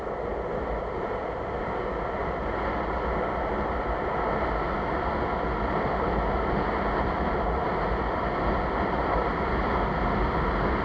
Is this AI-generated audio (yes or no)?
no